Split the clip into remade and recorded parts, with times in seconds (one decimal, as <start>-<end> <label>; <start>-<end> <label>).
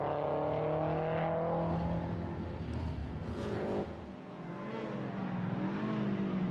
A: 0.0-3.0 recorded; 3.0-4.4 remade; 4.4-6.5 recorded